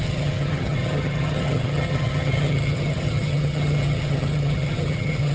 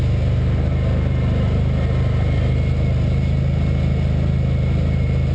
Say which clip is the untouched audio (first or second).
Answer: second